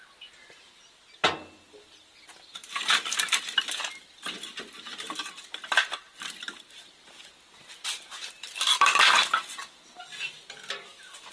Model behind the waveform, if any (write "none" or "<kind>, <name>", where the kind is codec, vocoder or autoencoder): none